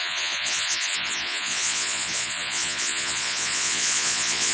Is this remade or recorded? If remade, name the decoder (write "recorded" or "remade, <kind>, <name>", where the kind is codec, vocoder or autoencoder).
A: remade, vocoder, Vocos